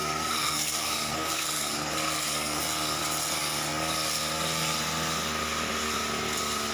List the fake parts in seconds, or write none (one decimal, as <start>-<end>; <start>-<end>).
0.0-2.6